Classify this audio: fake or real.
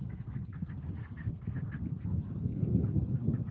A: fake